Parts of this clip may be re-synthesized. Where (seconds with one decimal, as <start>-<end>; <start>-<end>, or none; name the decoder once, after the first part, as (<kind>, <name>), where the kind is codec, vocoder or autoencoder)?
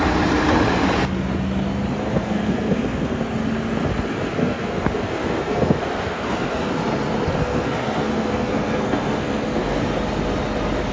2.0-3.2 (codec, SNAC); 4.4-6.7; 7.4-9.8